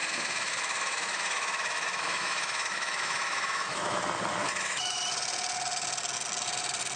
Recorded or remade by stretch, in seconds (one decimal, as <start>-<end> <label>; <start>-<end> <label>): 0.0-4.0 remade; 4.0-4.4 recorded; 4.4-5.0 remade; 5.0-7.0 recorded